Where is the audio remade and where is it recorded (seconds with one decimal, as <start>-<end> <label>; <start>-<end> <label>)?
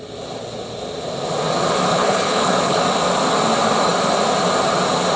0.0-1.9 recorded; 1.9-2.8 remade; 2.8-5.2 recorded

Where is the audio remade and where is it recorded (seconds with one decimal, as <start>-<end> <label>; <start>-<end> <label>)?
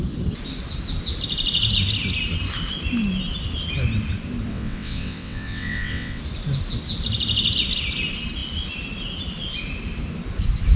0.0-4.5 recorded; 4.5-6.2 remade; 6.2-10.8 recorded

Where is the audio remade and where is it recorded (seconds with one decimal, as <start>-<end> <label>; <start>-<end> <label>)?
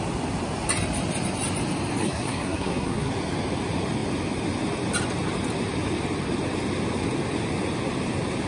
0.0-2.0 recorded; 2.0-3.1 remade; 3.1-8.5 recorded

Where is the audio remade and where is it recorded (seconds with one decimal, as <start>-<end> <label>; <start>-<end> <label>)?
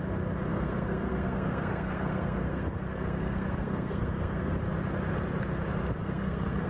0.0-0.5 recorded; 0.5-4.5 remade; 4.5-6.0 recorded; 6.0-6.7 remade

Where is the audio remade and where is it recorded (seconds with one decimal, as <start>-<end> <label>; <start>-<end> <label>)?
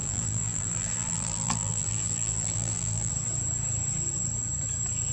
0.0-3.1 remade; 3.1-5.1 recorded